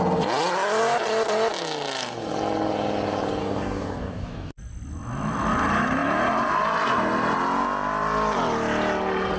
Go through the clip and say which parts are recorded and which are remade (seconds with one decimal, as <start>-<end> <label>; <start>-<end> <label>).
0.0-3.4 recorded; 3.4-4.5 remade; 4.5-9.4 recorded